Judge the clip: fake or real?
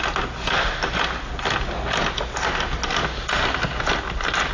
real